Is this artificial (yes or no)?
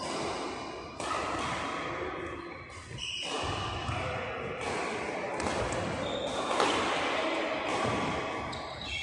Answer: no